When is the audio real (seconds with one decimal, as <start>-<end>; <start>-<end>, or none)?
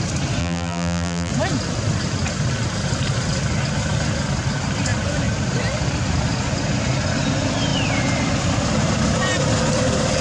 0.0-0.4; 1.3-10.2